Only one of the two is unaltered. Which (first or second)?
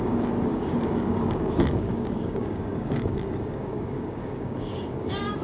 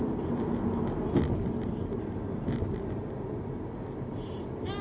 second